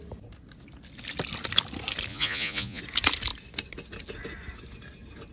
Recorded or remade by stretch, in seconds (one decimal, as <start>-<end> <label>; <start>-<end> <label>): 0.0-2.1 recorded; 2.1-2.8 remade; 2.8-5.3 recorded